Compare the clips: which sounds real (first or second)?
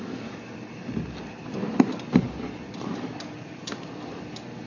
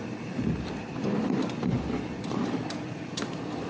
first